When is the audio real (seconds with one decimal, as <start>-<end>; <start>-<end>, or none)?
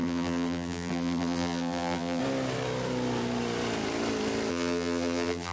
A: 2.2-4.5